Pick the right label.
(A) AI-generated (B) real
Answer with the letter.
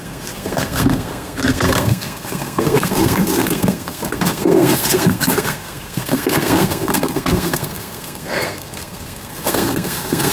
A